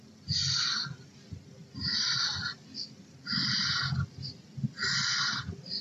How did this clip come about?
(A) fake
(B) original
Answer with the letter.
B